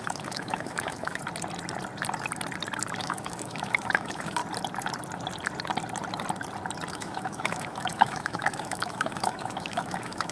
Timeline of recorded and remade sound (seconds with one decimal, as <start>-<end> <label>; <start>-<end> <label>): 0.0-1.2 remade; 1.2-3.0 recorded; 3.0-4.4 remade; 4.4-6.9 recorded; 6.9-10.3 remade